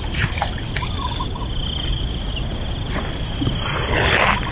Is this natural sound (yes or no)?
yes